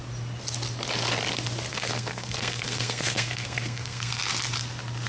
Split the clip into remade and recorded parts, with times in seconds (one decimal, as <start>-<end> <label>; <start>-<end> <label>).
0.0-1.7 recorded; 1.7-4.2 remade; 4.2-5.1 recorded